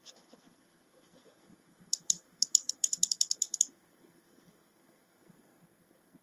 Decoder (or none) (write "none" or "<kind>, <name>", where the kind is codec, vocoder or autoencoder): codec, SNAC